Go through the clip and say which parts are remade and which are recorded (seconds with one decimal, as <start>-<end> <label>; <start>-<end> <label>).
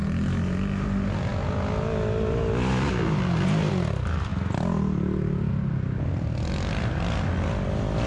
0.0-8.1 recorded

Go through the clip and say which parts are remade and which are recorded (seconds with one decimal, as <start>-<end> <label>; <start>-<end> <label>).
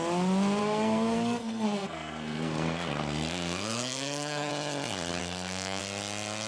0.0-0.6 recorded; 0.6-4.5 remade; 4.5-5.2 recorded; 5.2-5.8 remade; 5.8-6.5 recorded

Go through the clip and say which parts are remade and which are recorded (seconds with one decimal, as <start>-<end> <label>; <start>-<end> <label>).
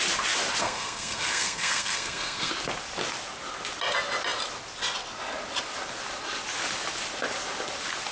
0.0-0.6 recorded; 0.6-2.5 remade; 2.5-8.1 recorded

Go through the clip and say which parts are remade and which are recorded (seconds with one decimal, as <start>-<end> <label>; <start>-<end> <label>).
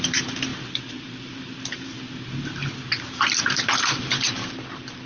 0.0-2.6 remade; 2.6-3.4 recorded; 3.4-5.1 remade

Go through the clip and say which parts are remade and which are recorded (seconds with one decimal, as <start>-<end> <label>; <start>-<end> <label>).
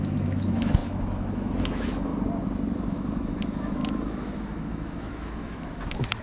0.0-2.1 remade; 2.1-2.9 recorded; 2.9-6.2 remade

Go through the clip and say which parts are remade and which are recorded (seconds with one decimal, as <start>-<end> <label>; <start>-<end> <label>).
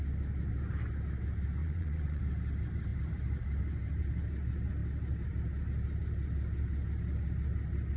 0.0-1.6 recorded; 1.6-2.2 remade; 2.2-8.0 recorded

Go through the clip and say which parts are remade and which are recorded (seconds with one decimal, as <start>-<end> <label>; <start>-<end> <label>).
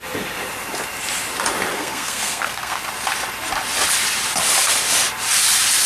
0.0-1.7 recorded; 1.7-2.8 remade; 2.8-5.9 recorded